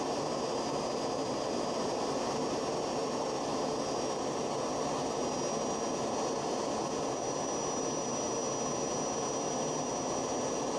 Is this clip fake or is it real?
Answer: real